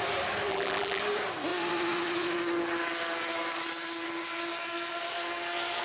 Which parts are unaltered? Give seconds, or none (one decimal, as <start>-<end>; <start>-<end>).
0.0-0.5; 1.0-5.8